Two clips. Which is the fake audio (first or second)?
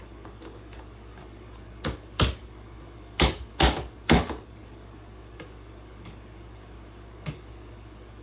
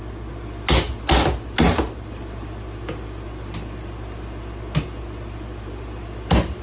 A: first